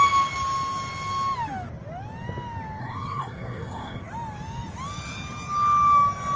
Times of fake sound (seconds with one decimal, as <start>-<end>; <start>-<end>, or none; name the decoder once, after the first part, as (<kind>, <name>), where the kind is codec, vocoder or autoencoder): 2.8-4.0 (codec, SNAC)